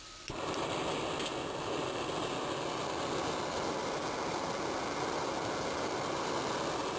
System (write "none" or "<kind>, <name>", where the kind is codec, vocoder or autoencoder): none